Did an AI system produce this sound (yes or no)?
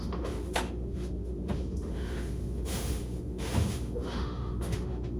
yes